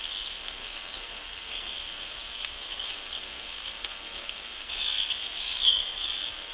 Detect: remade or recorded remade